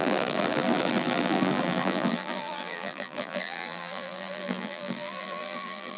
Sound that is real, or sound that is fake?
fake